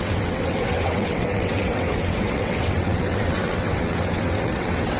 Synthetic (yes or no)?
yes